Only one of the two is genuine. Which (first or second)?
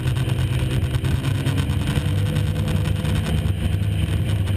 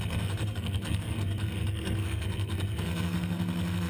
first